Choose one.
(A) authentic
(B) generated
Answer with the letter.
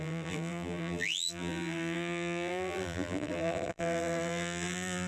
B